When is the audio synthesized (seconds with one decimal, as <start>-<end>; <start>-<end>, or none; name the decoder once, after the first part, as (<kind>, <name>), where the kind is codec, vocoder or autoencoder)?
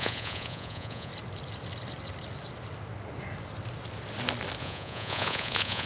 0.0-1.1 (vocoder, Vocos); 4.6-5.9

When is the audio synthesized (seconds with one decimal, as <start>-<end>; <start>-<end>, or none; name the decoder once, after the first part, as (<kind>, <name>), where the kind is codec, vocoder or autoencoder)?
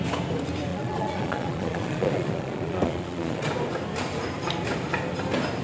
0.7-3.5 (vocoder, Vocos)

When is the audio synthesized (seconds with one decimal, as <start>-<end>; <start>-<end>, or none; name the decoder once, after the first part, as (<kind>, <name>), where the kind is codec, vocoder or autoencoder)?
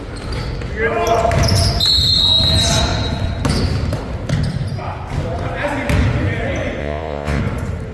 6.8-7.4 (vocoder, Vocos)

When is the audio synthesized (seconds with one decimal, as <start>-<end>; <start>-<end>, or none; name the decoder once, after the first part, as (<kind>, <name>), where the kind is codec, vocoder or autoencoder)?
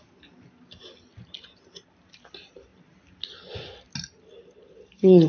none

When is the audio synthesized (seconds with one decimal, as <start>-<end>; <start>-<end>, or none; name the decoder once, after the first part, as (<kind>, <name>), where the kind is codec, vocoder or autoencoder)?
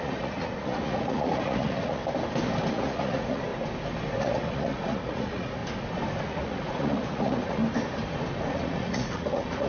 0.0-2.0 (vocoder, Vocos); 2.7-3.5; 4.2-5.6; 6.2-7.6; 8.5-9.7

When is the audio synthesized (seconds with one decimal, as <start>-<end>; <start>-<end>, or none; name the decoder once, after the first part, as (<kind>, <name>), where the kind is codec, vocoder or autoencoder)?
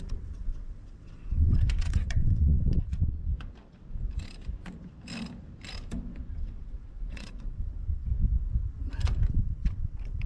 0.0-3.3 (vocoder, WaveNeXt); 6.3-8.1; 9.3-10.3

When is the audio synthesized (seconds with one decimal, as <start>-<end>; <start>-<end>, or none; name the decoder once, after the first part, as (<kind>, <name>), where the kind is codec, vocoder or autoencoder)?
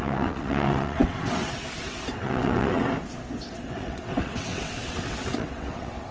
0.0-2.8 (vocoder, WaveNeXt); 3.5-6.1